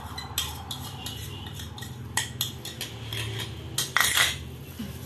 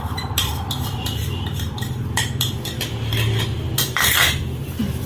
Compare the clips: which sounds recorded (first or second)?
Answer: first